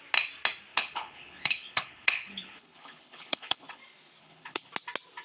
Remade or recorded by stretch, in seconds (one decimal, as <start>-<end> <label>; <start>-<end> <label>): 0.0-0.7 recorded; 0.7-3.8 remade; 3.8-4.2 recorded; 4.2-4.7 remade; 4.7-5.2 recorded